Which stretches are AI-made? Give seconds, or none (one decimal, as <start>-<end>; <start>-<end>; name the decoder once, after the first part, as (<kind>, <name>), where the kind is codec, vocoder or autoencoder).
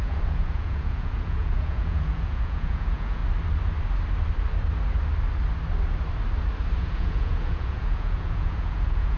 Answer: 0.0-3.2 (vocoder, Vocos); 6.8-9.2